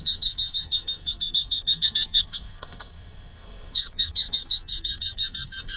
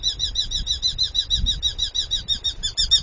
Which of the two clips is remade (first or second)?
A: first